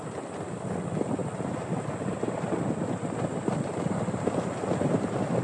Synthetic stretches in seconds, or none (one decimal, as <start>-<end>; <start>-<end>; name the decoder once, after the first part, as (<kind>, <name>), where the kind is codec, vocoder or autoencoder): none